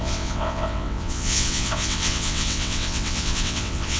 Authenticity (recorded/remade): remade